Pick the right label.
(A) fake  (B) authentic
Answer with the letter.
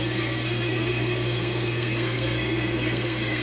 A